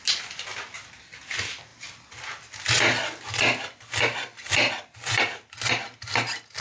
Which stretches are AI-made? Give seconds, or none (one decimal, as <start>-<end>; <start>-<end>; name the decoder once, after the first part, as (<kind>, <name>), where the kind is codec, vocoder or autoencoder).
none